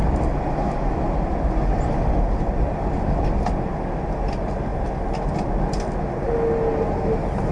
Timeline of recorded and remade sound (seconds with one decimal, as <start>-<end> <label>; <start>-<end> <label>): 0.0-7.5 recorded